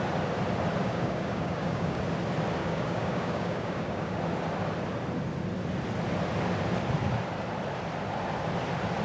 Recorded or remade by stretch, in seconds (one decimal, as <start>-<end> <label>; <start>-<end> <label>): 0.0-0.8 recorded; 0.8-2.0 remade; 2.0-2.6 recorded; 2.6-4.2 remade; 4.2-9.0 recorded